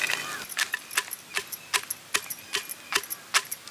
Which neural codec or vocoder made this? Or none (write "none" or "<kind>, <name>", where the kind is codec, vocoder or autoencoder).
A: none